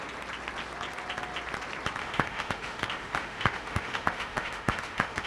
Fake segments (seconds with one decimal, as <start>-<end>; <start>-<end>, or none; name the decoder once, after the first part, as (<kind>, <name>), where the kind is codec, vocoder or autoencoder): 2.0-5.3 (autoencoder, DAC-VAE)